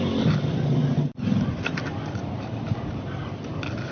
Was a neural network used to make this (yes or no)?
no